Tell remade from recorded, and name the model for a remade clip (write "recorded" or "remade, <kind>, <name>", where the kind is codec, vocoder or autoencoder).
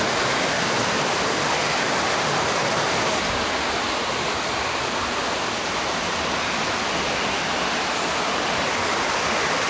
recorded